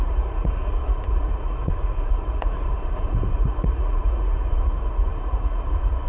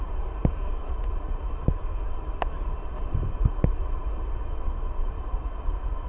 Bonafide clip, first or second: second